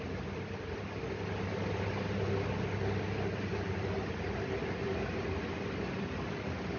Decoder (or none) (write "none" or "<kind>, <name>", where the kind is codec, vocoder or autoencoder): none